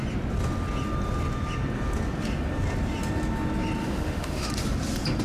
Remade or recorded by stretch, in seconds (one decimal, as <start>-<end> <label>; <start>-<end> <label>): 0.0-3.8 recorded; 3.8-4.5 remade; 4.5-5.2 recorded